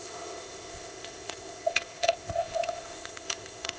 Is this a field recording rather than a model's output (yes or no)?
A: no